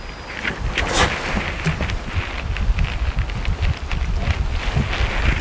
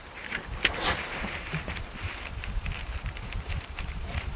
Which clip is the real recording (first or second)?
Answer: first